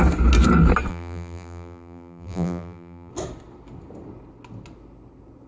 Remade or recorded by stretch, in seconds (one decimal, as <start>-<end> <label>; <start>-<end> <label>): 0.0-0.9 recorded; 0.9-3.1 remade; 3.1-5.5 recorded